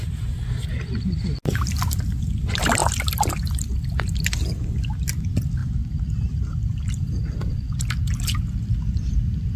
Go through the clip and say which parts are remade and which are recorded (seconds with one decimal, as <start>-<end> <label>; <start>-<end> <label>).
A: 0.0-9.6 recorded